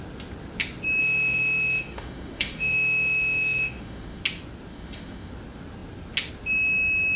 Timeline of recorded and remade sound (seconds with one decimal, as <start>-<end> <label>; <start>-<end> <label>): 0.0-1.0 recorded; 1.0-4.2 remade; 4.2-4.7 recorded; 4.7-5.3 remade; 5.3-7.2 recorded